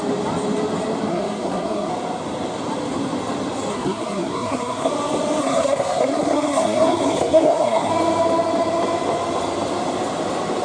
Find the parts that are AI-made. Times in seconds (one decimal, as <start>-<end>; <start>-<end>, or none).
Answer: 1.1-1.9; 3.7-4.9; 5.4-7.9